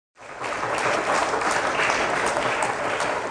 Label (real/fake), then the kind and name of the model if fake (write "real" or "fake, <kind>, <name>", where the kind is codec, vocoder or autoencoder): real